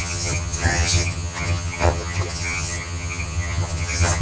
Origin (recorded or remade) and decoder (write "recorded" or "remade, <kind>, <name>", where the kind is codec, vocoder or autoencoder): remade, vocoder, HiFi-GAN